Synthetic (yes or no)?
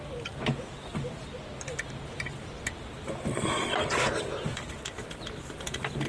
no